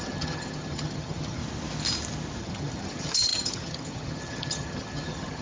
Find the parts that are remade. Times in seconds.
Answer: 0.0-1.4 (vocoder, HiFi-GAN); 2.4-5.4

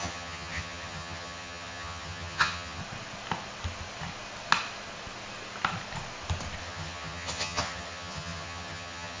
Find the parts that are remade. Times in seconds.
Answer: 0.0-2.8 (vocoder, HiFi-GAN); 6.6-9.2

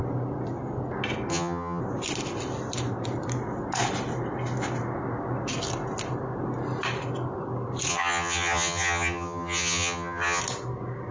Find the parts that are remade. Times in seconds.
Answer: 1.3-1.8 (vocoder, HiFi-GAN); 7.9-10.4

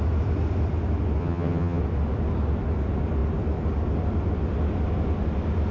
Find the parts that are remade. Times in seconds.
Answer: 1.2-1.8 (vocoder, HiFi-GAN)

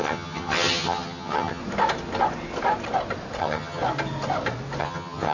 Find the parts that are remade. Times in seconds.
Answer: 0.0-1.6 (vocoder, HiFi-GAN); 3.4-3.8; 4.8-5.3

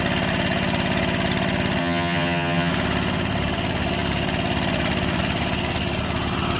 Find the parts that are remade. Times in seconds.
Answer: 1.8-2.7 (vocoder, HiFi-GAN)